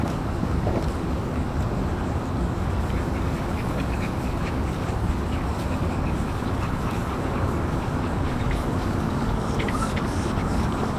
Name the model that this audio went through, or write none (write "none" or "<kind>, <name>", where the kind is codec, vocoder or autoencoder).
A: codec, DAC